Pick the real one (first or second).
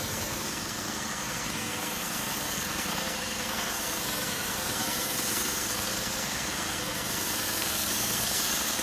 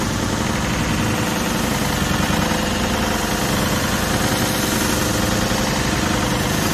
second